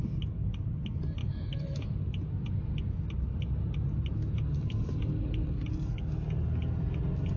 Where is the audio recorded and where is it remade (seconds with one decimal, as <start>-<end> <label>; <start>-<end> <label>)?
0.0-1.2 recorded; 1.2-1.8 remade; 1.8-7.4 recorded